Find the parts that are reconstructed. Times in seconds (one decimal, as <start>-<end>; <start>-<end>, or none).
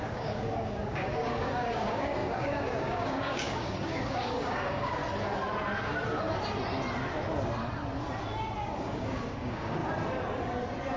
0.0-5.0; 8.7-9.8